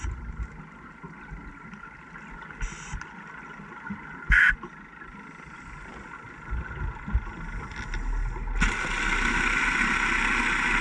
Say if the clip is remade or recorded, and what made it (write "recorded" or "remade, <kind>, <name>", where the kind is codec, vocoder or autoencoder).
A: recorded